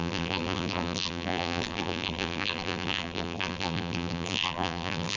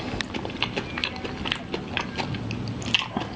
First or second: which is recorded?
second